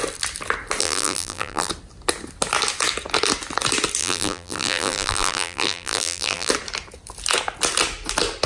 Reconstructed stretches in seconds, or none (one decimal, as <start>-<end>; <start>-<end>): 0.8-1.7; 4.0-6.5